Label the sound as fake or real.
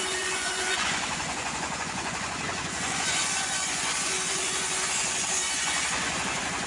fake